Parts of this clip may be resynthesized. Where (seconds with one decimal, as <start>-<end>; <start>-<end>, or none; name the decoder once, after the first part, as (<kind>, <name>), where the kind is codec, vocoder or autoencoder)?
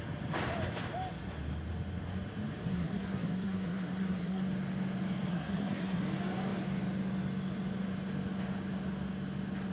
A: 2.7-4.4 (codec, SNAC); 5.3-6.0